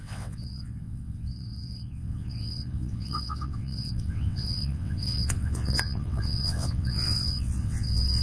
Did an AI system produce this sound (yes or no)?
yes